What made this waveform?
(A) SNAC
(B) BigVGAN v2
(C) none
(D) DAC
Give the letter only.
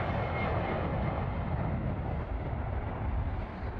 C